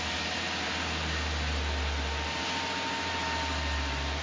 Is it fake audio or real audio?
real